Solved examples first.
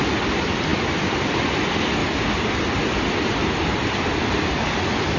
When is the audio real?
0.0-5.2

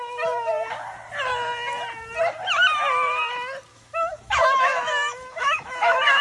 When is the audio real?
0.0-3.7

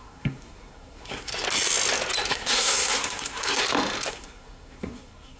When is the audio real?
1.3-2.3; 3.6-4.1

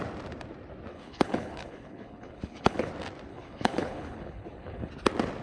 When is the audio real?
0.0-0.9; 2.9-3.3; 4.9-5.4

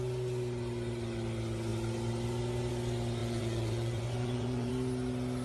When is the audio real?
0.0-3.2; 4.7-5.4